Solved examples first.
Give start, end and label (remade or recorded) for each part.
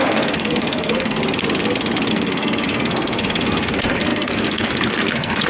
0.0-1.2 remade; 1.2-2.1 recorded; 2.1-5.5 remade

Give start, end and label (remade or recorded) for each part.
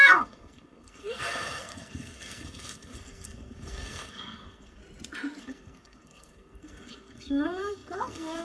0.0-4.8 remade; 4.8-5.4 recorded; 5.4-8.4 remade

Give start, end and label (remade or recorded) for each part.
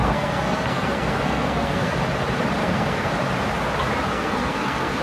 0.0-2.0 remade; 2.0-2.6 recorded; 2.6-3.1 remade; 3.1-4.1 recorded; 4.1-5.0 remade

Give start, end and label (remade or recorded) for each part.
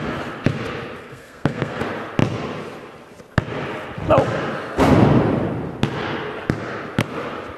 0.0-1.0 recorded; 1.0-1.8 remade; 1.8-7.6 recorded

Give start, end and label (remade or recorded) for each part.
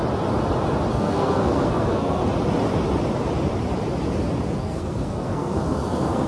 0.0-0.9 recorded; 0.9-2.2 remade; 2.2-4.6 recorded; 4.6-6.3 remade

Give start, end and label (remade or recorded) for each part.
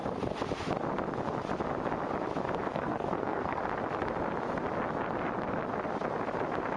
0.0-2.7 recorded; 2.7-3.6 remade; 3.6-6.8 recorded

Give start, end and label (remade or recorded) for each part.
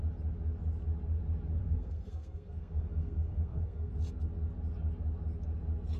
0.0-1.6 recorded; 1.6-3.9 remade; 3.9-6.0 recorded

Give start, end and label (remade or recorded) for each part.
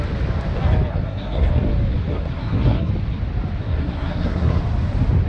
0.0-0.9 recorded; 0.9-1.5 remade; 1.5-2.1 recorded; 2.1-2.9 remade; 2.9-3.6 recorded; 3.6-4.6 remade; 4.6-5.3 recorded